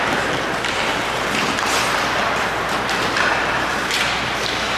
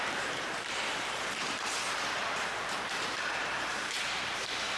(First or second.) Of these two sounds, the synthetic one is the second